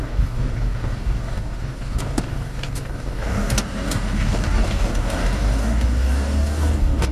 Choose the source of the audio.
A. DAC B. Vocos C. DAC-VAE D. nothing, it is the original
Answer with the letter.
A